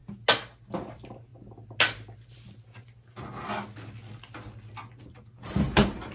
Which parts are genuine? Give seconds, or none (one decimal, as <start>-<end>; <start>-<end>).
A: 0.0-0.7; 1.3-5.0